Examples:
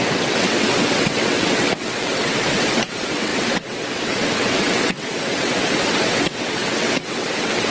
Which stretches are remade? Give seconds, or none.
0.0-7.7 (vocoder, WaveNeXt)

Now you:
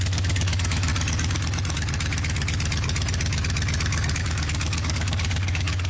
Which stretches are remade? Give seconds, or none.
0.0-0.9 (codec, DAC); 4.2-5.9

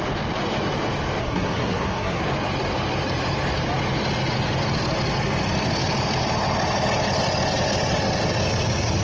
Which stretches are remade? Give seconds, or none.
1.2-2.2 (codec, SNAC)

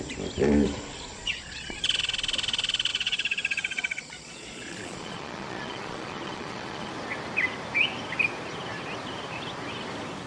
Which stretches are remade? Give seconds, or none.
1.1-1.8 (vocoder, Vocos); 2.9-6.9

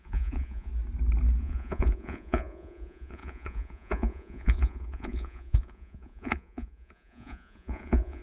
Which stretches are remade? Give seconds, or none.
0.0-0.7 (vocoder, Vocos); 1.4-8.2

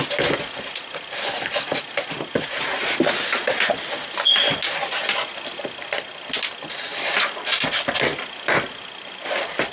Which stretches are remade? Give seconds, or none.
8.1-8.7 (vocoder, BigVGAN v2)

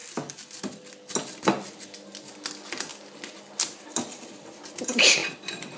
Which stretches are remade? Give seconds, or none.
5.2-5.8 (vocoder, BigVGAN v2)

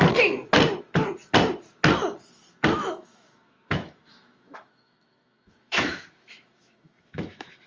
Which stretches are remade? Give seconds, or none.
2.8-7.7 (autoencoder, DAC-VAE)